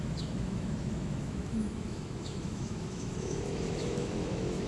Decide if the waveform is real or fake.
fake